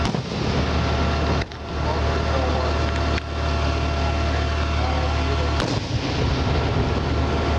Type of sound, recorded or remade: recorded